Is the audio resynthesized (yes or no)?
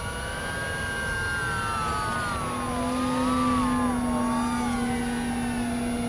no